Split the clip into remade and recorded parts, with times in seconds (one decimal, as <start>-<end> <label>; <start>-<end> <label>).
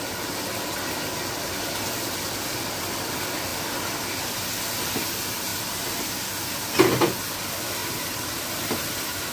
0.0-7.8 recorded; 7.8-8.9 remade; 8.9-9.3 recorded